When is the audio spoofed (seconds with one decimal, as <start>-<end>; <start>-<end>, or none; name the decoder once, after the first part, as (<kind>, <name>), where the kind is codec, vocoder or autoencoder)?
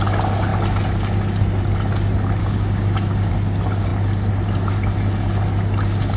2.4-3.3 (codec, DAC)